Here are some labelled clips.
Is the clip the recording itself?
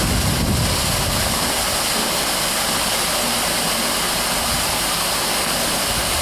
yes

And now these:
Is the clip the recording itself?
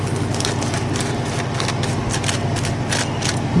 yes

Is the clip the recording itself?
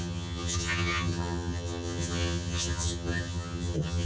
no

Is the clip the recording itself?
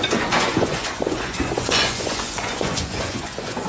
no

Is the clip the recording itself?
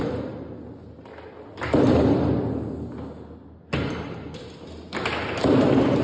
yes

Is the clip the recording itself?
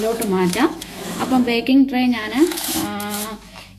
no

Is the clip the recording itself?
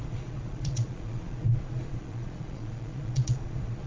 no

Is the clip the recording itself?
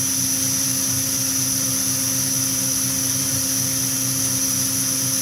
yes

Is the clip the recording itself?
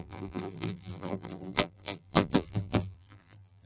no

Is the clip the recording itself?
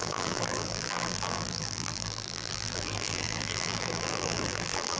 no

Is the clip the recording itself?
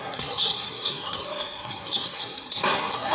no